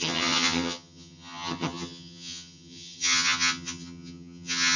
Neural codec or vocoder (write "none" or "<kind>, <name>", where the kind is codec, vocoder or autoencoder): vocoder, HiFi-GAN